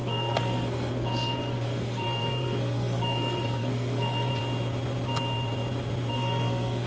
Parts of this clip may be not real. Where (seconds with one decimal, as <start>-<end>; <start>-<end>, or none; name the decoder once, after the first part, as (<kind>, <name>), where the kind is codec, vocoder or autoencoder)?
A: 0.0-4.3 (codec, SNAC); 6.1-6.9